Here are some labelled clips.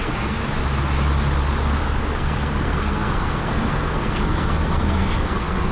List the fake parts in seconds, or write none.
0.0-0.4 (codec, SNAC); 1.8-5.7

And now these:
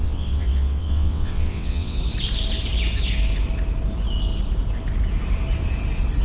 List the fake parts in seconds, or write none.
0.0-2.0 (vocoder, WaveNeXt)

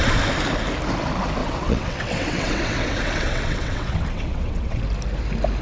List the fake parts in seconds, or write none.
1.4-4.8 (vocoder, WaveNeXt)

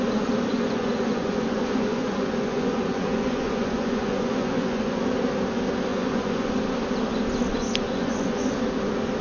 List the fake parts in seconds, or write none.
0.5-5.0 (vocoder, Vocos); 5.9-6.5; 7.5-8.5